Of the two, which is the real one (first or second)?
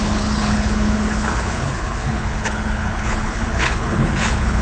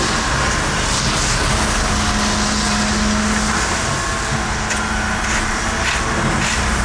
second